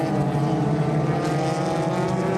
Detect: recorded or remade recorded